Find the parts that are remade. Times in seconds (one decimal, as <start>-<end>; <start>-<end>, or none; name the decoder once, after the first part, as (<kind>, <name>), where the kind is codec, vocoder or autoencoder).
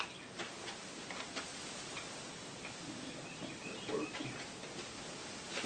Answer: none